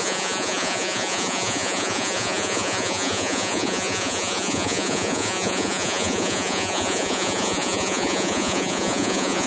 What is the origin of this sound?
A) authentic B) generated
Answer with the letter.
B